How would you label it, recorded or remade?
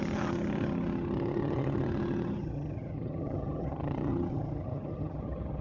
remade